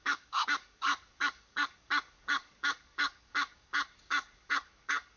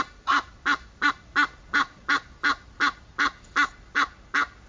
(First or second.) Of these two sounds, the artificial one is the first